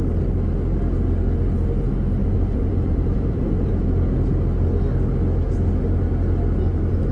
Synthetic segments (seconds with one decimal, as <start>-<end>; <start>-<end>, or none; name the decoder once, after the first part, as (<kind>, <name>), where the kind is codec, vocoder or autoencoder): 2.2-3.7 (vocoder, BigVGAN v2)